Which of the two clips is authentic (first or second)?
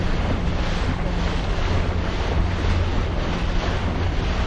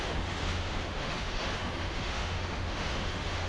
first